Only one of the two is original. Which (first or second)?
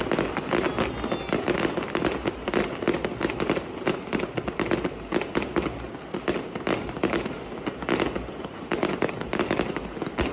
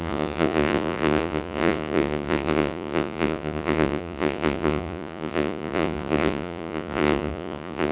first